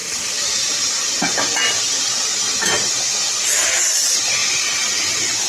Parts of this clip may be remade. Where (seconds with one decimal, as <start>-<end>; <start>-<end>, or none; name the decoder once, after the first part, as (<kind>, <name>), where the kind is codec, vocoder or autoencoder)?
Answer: 0.0-4.4 (vocoder, BigVGAN v2)